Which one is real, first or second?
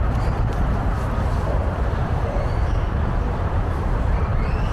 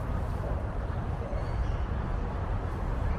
second